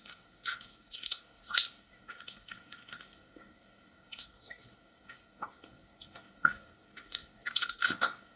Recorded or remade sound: remade